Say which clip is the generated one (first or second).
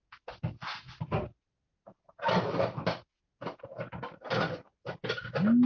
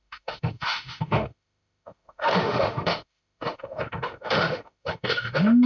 second